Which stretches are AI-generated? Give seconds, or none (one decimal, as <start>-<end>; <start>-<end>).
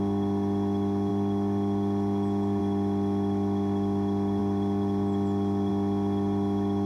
4.4-5.7